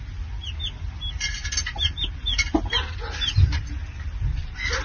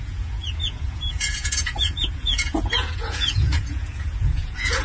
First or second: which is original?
first